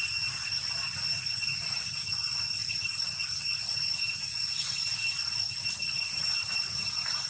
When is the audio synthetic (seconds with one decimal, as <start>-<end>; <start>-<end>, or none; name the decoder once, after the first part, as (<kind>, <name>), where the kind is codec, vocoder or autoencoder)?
none